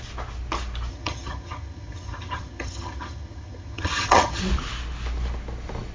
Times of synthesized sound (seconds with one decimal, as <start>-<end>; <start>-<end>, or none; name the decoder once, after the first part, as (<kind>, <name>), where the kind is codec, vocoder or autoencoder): 0.9-4.4 (vocoder, HiFi-GAN)